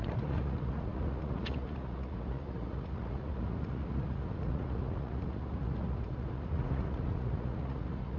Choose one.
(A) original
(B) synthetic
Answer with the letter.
B